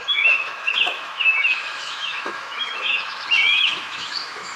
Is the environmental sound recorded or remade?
remade